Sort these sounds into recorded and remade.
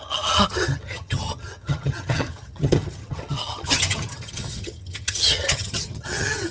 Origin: remade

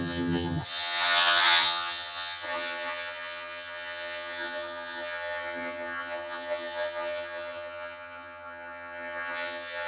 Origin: remade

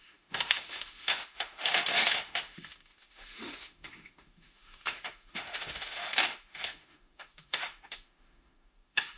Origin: remade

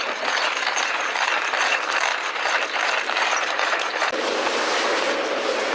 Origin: remade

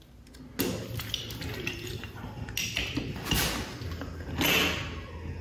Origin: recorded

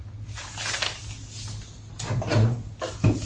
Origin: recorded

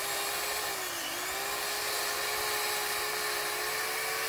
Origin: recorded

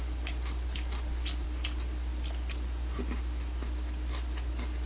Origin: recorded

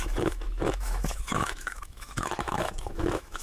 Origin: remade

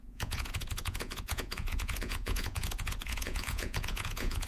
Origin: remade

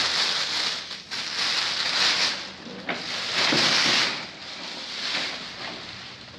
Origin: recorded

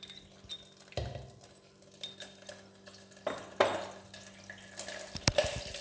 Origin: recorded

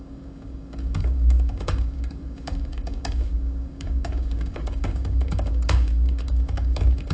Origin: remade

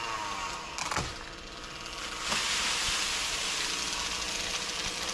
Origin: recorded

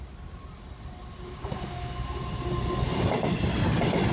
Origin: recorded